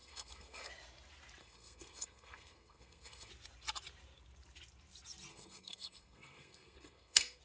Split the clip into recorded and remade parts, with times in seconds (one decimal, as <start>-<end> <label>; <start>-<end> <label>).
0.0-0.7 remade; 0.7-1.4 recorded; 1.4-3.3 remade; 3.3-5.3 recorded; 5.3-7.4 remade